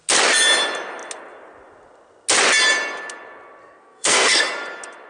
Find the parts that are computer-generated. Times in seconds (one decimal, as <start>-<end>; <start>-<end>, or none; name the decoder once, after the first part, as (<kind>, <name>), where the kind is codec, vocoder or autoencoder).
3.6-4.4 (codec, SNAC)